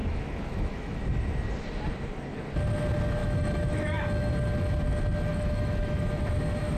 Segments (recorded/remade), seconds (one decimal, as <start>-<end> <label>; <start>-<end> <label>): 0.0-1.0 remade; 1.0-3.2 recorded; 3.2-4.3 remade; 4.3-5.3 recorded; 5.3-6.1 remade; 6.1-6.8 recorded